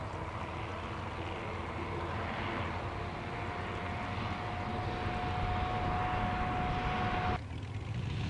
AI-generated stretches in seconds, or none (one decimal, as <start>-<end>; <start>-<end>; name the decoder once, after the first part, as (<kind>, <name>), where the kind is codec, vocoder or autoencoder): none